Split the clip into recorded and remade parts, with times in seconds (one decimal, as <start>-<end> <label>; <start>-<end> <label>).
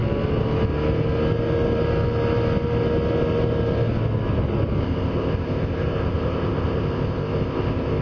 0.0-4.8 recorded; 4.8-8.0 remade